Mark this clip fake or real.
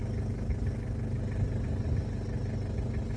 real